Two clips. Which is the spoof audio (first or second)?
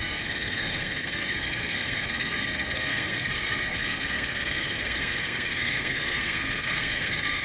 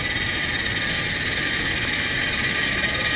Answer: first